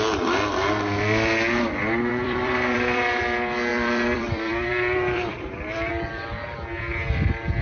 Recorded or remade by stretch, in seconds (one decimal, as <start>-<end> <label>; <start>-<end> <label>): 0.0-2.1 recorded; 2.1-3.2 remade; 3.2-3.7 recorded; 3.7-5.9 remade; 5.9-7.6 recorded